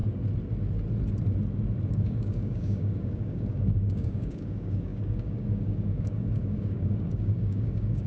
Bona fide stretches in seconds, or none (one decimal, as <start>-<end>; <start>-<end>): 0.0-1.9